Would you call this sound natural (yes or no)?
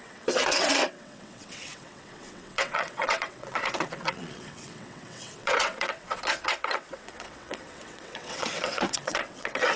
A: no